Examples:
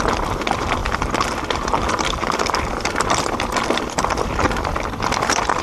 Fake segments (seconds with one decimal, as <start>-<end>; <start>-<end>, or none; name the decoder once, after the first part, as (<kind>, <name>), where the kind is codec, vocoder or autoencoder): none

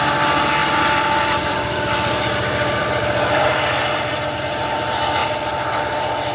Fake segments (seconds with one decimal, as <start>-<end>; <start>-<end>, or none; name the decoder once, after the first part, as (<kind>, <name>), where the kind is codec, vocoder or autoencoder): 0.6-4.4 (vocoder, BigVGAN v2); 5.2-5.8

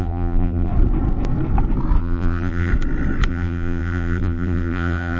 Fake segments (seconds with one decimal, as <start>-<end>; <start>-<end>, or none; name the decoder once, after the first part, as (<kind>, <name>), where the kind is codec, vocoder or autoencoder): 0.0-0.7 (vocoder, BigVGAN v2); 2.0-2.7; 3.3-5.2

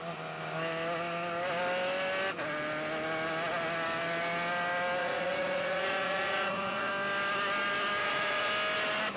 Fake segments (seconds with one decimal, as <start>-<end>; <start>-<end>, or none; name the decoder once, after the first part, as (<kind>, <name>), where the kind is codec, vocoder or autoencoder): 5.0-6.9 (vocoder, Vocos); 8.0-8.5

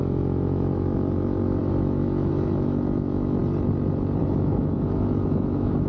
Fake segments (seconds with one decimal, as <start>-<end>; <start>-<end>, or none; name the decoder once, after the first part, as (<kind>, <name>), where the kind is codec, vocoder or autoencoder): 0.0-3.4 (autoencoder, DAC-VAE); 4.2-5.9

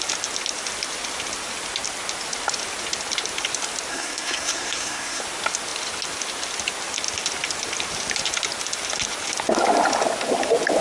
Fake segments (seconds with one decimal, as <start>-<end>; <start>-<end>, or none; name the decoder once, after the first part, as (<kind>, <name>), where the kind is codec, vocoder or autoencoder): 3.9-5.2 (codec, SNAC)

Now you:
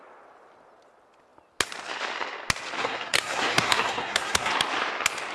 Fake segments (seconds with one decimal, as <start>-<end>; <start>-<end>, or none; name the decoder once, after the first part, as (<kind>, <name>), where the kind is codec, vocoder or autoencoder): 2.8-4.5 (codec, SNAC)